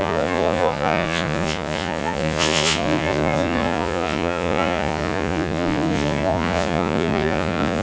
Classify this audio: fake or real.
fake